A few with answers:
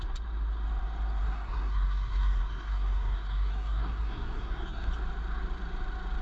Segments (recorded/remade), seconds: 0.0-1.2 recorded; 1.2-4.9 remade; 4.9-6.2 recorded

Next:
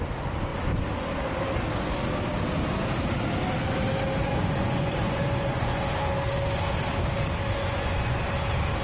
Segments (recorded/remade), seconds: 0.0-4.2 recorded; 4.2-5.8 remade; 5.8-7.6 recorded; 7.6-8.2 remade; 8.2-8.8 recorded

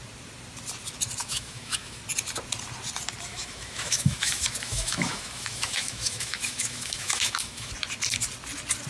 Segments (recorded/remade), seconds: 0.0-1.2 recorded; 1.2-2.0 remade; 2.0-3.3 recorded; 3.3-7.7 remade; 7.7-8.9 recorded

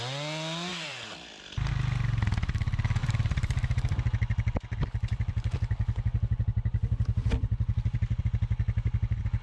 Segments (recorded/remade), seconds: 0.0-0.7 recorded; 0.7-1.7 remade; 1.7-3.0 recorded; 3.0-8.2 remade; 8.2-9.4 recorded

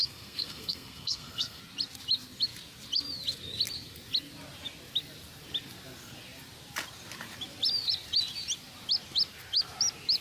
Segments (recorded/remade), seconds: 0.0-1.6 remade; 1.6-10.2 recorded